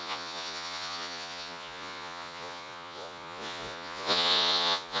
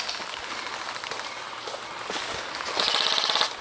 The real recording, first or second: second